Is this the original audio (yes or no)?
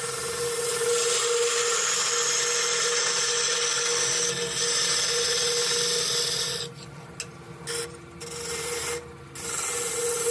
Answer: yes